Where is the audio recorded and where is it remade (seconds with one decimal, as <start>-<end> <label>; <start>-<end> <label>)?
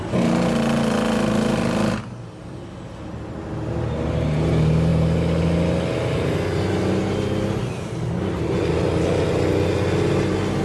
0.0-10.6 recorded